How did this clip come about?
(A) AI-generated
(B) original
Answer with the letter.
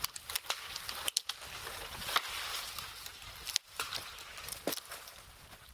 B